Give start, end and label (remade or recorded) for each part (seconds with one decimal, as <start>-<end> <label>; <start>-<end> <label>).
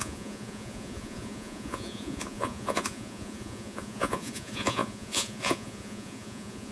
0.0-6.7 remade